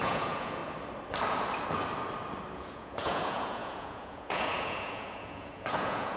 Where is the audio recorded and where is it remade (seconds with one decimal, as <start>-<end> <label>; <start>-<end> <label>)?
0.0-0.6 remade; 0.6-2.5 recorded; 2.5-6.2 remade